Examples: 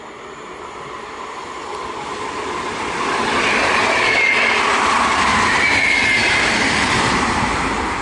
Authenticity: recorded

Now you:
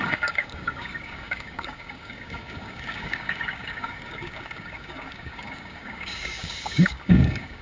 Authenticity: remade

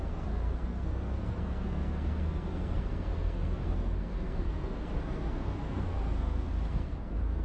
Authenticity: remade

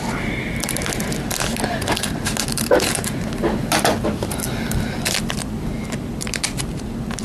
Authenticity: recorded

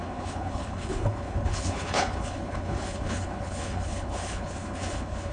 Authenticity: remade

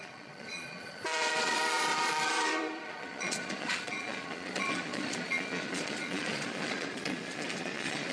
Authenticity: remade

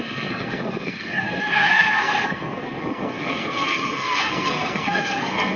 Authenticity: remade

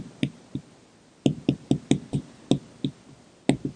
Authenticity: recorded